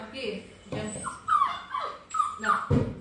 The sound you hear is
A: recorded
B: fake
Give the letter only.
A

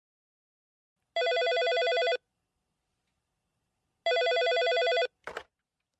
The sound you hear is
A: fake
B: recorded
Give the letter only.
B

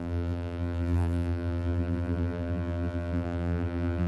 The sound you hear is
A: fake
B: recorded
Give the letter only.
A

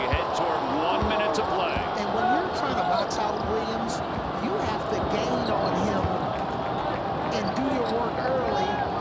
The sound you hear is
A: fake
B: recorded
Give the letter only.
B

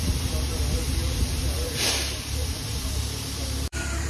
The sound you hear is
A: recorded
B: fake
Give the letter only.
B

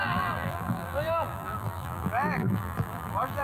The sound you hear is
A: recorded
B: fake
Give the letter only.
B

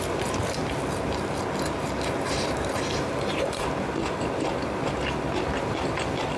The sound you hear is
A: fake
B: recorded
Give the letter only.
B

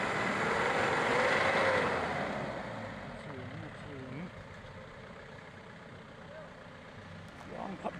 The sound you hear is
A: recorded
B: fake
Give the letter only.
B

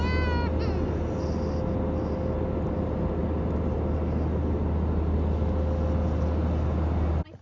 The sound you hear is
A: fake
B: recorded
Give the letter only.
B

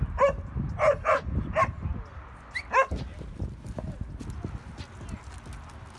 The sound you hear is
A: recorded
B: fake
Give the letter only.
A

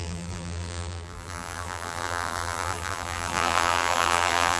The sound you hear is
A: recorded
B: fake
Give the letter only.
B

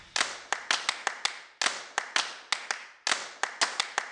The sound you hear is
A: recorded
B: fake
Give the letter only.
A